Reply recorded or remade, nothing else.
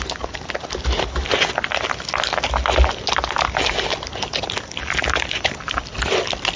recorded